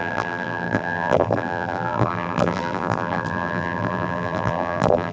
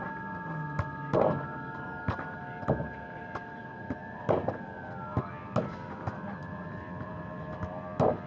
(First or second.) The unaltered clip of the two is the second